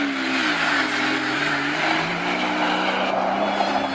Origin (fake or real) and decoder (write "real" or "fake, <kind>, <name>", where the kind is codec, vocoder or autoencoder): real